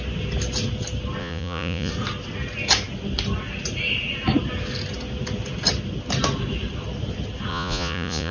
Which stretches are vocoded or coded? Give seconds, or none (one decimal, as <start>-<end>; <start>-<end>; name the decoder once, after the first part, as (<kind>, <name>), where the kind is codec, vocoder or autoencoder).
1.2-1.9 (vocoder, Vocos); 7.5-8.3